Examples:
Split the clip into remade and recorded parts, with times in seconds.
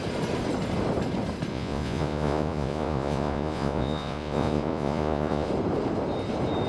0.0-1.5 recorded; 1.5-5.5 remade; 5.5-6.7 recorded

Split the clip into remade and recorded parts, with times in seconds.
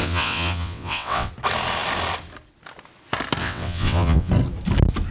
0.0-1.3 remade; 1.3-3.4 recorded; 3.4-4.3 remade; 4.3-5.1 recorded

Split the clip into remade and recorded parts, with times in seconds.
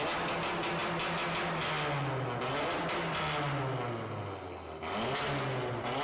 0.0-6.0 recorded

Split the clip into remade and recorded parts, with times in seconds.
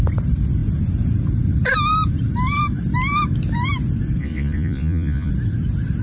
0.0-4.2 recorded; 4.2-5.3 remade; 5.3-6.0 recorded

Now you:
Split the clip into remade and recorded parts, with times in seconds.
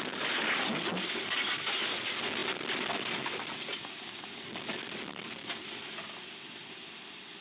0.0-7.4 recorded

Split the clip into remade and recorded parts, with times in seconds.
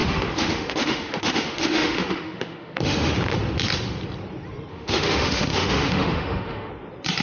0.0-3.1 remade; 3.1-4.7 recorded; 4.7-6.7 remade; 6.7-7.2 recorded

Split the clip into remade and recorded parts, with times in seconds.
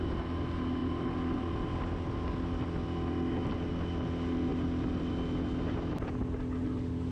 0.0-7.1 recorded